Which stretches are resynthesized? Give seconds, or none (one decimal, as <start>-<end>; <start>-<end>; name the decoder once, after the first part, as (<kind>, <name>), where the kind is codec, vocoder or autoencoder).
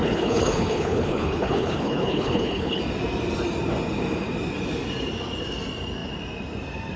0.0-2.8 (codec, HILCodec)